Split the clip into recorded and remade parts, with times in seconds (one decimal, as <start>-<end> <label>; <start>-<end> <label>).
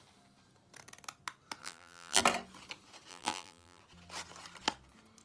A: 0.0-1.6 recorded; 1.6-2.2 remade; 2.2-3.1 recorded; 3.1-3.8 remade; 3.8-5.2 recorded